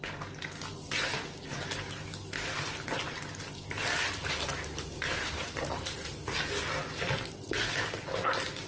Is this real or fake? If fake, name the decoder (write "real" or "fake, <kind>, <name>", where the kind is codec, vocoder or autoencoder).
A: real